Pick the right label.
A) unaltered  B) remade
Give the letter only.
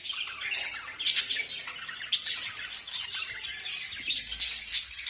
A